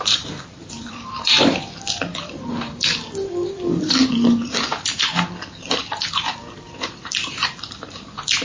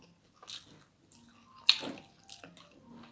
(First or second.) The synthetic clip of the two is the first